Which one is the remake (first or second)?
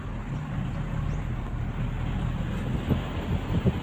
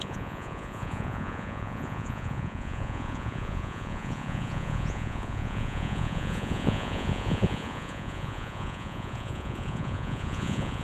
second